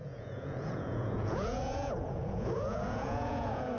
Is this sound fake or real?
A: fake